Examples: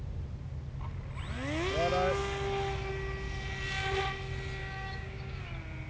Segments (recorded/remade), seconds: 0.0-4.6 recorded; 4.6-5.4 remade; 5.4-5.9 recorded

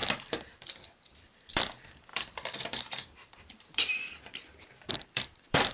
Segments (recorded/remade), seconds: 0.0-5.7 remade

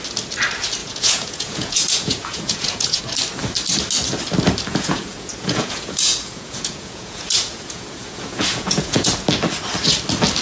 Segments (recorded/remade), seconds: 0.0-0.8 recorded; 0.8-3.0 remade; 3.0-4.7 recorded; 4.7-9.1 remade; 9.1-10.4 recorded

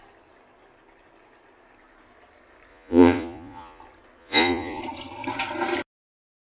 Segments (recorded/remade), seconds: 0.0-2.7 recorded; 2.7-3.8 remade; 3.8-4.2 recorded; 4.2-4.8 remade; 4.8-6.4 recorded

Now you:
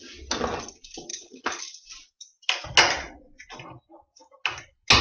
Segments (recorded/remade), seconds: 0.0-1.1 recorded; 1.1-1.6 remade; 1.6-5.0 recorded

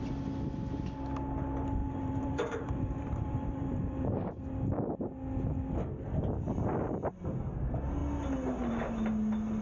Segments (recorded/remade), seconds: 0.0-1.8 recorded; 1.8-4.4 remade; 4.4-9.6 recorded

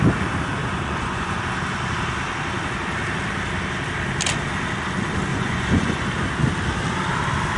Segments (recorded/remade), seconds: 0.0-0.6 recorded; 0.6-1.4 remade; 1.4-5.3 recorded; 5.3-6.0 remade; 6.0-7.6 recorded